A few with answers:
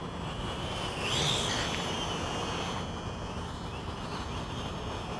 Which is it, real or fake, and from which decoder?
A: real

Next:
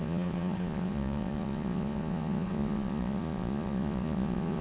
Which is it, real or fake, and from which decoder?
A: fake, vocoder, Vocos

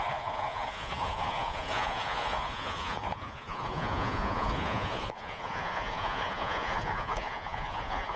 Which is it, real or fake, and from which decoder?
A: fake, vocoder, Vocos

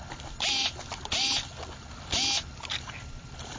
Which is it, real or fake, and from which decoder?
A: real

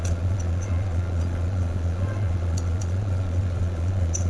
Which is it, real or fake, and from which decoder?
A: fake, vocoder, Vocos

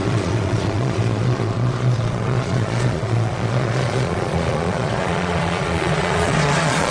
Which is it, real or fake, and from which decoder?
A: fake, vocoder, Vocos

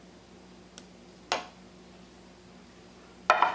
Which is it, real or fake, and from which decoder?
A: real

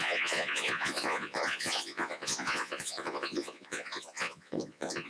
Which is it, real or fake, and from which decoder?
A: fake, vocoder, Vocos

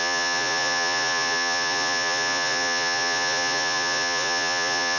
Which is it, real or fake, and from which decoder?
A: fake, vocoder, Vocos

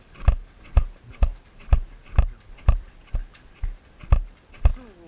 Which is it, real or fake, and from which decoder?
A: real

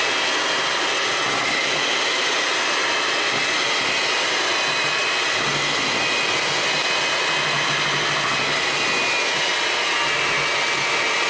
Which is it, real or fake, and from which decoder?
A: real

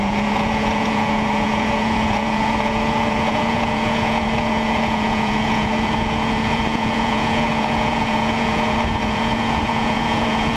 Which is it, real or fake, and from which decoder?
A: fake, vocoder, Vocos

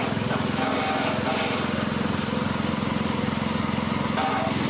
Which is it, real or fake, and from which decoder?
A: real